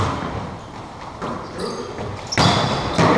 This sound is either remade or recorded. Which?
recorded